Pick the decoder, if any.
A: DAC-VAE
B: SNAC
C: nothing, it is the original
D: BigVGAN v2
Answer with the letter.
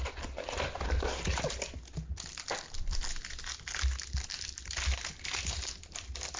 C